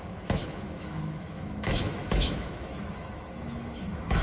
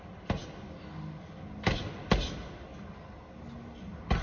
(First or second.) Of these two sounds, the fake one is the first